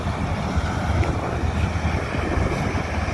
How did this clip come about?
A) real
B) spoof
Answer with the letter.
A